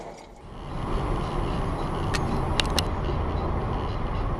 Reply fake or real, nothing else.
real